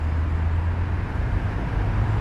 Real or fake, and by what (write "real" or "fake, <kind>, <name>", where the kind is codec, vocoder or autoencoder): real